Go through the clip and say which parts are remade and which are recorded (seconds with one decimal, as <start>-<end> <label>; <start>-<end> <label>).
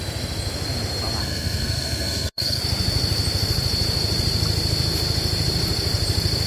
0.0-1.2 recorded; 1.2-2.6 remade; 2.6-6.5 recorded